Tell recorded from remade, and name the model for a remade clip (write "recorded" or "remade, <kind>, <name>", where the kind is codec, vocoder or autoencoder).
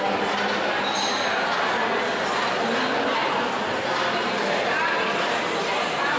recorded